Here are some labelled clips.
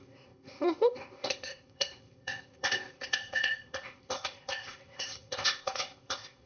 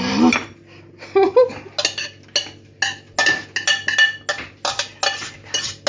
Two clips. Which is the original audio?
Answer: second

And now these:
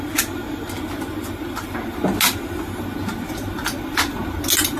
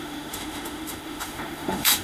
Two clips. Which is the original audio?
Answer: first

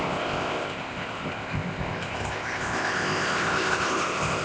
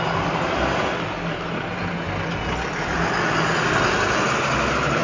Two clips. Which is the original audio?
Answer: second